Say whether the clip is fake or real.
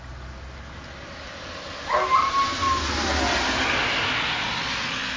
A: real